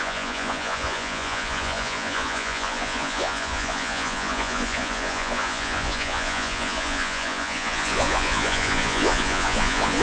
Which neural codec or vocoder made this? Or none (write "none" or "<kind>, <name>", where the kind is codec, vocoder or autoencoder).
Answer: vocoder, Vocos